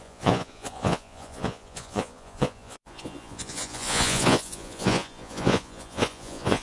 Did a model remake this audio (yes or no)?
yes